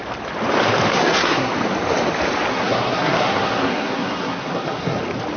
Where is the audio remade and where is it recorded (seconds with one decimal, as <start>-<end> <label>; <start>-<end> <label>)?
0.0-0.9 recorded; 0.9-1.5 remade; 1.5-2.5 recorded; 2.5-5.0 remade; 5.0-5.4 recorded